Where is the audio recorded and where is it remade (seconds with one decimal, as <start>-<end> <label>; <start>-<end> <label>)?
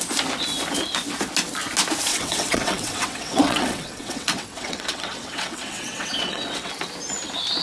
0.0-2.1 recorded; 2.1-6.7 remade; 6.7-7.6 recorded